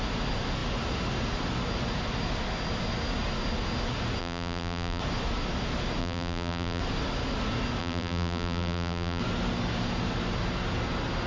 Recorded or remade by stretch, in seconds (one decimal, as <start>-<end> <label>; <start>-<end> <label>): 0.0-4.2 recorded; 4.2-5.0 remade; 5.0-6.0 recorded; 6.0-6.8 remade; 6.8-7.8 recorded; 7.8-9.2 remade; 9.2-11.3 recorded